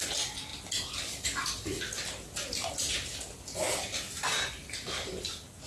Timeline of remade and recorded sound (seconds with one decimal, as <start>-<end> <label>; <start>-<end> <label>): 0.0-5.7 recorded